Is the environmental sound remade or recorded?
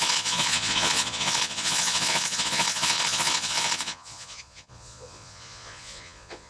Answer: remade